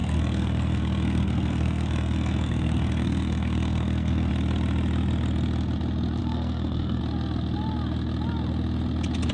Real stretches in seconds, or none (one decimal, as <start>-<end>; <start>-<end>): 4.3-6.2; 7.0-9.3